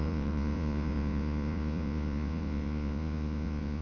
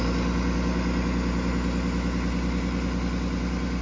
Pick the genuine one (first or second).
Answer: second